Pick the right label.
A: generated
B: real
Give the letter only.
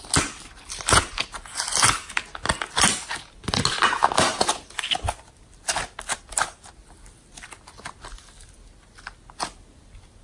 B